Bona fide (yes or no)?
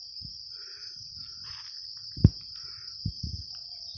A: yes